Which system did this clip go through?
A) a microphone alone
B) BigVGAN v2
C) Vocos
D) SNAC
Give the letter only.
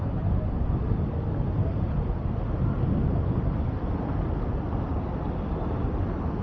A